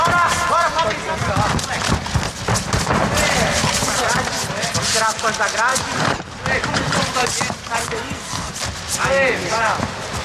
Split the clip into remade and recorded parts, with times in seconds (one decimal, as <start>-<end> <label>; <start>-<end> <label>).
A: 0.0-7.8 recorded; 7.8-8.5 remade; 8.5-10.2 recorded